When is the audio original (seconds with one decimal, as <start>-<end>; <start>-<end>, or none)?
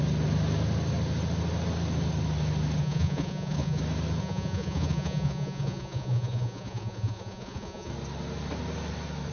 0.0-2.8; 3.8-4.2; 7.9-9.3